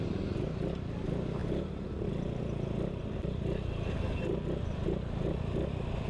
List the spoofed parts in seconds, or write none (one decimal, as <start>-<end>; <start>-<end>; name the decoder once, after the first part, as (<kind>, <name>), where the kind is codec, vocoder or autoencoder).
1.4-1.9 (vocoder, BigVGAN v2)